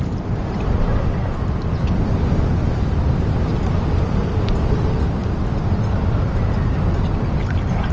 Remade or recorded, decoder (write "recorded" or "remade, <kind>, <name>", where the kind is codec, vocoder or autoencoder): recorded